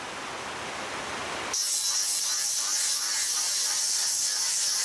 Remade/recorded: recorded